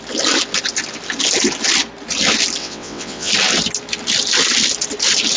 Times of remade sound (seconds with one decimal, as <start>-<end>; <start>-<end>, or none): 2.6-3.3